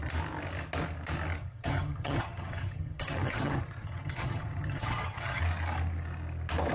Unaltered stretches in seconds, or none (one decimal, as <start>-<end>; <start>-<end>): 0.0-1.4; 5.4-6.7